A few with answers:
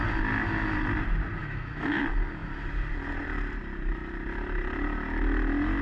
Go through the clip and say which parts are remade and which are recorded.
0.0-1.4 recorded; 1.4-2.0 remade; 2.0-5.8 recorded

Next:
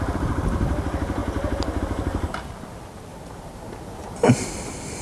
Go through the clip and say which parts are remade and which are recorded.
0.0-3.1 recorded; 3.1-4.5 remade; 4.5-5.0 recorded

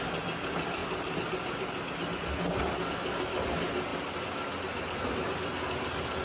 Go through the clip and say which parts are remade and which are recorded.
0.0-6.2 recorded